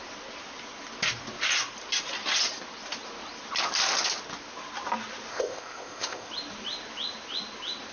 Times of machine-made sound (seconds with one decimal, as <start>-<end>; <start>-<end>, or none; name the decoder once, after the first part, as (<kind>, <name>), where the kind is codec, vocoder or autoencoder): 5.3-6.3 (codec, ZipCodec)